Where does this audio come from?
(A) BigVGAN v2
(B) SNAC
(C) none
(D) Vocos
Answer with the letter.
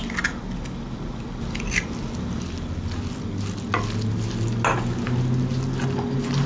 C